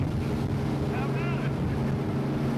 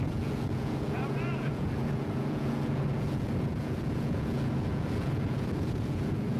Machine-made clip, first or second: second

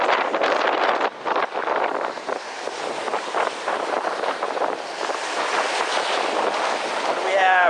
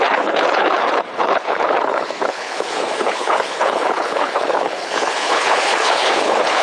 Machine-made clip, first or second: second